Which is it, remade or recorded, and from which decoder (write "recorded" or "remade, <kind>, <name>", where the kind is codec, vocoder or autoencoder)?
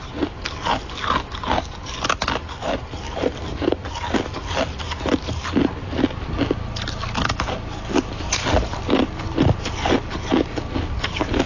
recorded